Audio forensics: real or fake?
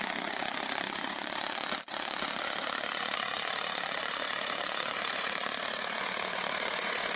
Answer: fake